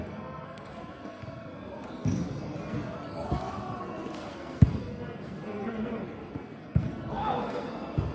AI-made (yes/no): yes